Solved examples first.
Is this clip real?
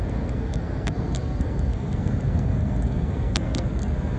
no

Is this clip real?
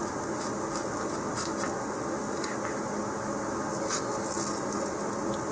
yes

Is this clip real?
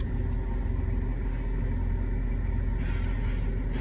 yes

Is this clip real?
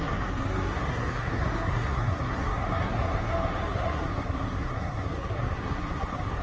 no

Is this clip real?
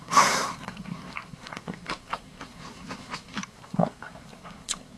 no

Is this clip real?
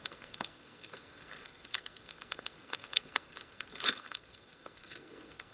no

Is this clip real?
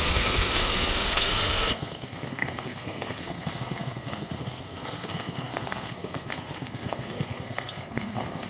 no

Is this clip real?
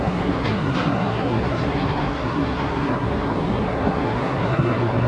no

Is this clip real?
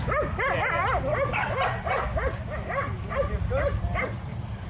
yes